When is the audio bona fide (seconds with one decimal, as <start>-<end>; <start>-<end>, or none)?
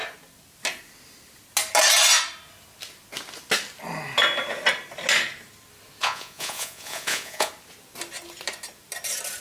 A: 0.0-6.0; 7.5-9.4